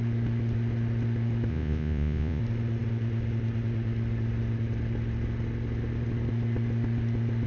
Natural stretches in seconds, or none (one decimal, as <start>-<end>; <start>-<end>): 0.0-1.5; 2.4-7.5